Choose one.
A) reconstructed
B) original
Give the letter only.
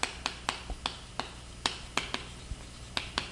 B